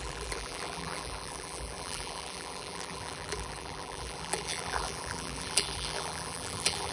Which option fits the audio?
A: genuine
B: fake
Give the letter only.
B